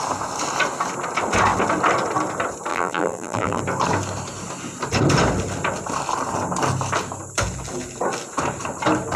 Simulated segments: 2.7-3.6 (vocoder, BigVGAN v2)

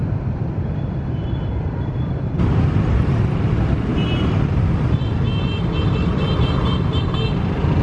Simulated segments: 0.0-3.0 (vocoder, BigVGAN v2); 3.9-4.7; 5.5-6.5

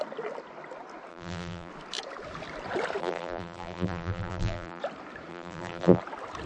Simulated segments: 1.1-1.7 (vocoder, BigVGAN v2); 3.0-4.8; 5.3-6.0